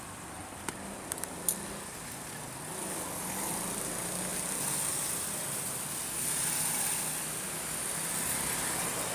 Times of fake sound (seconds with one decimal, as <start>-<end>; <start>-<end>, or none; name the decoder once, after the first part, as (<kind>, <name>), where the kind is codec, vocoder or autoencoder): none